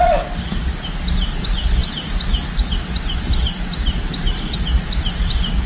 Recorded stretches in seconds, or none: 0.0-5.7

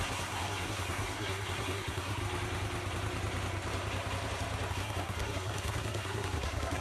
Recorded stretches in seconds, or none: 2.2-4.7

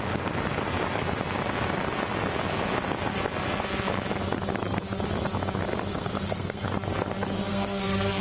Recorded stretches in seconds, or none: 0.0-5.9; 6.7-7.5